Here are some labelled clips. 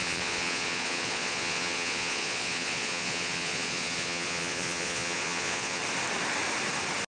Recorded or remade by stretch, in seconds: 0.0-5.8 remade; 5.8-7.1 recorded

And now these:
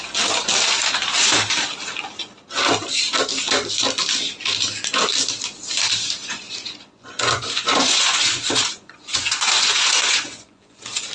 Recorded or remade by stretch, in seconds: 0.0-6.2 recorded; 6.2-11.1 remade

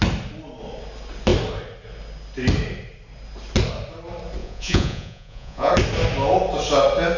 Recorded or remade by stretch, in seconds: 0.0-4.4 recorded; 4.4-5.7 remade; 5.7-7.2 recorded

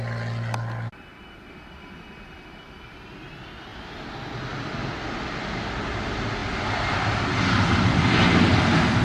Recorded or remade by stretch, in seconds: 0.0-9.0 recorded

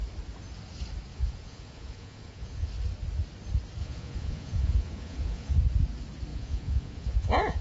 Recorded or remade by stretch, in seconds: 0.0-1.1 recorded; 1.1-2.7 remade; 2.7-3.8 recorded; 3.8-5.6 remade; 5.6-6.3 recorded; 6.3-7.6 remade

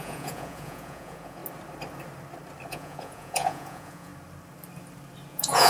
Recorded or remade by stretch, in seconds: 0.0-1.4 remade; 1.4-2.7 recorded; 2.7-4.1 remade; 4.1-5.3 recorded; 5.3-5.7 remade

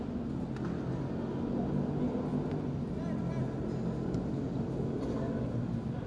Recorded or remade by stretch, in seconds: 0.0-6.1 recorded

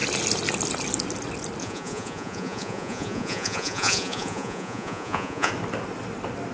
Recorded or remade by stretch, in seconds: 0.0-1.6 recorded; 1.6-5.5 remade; 5.5-6.5 recorded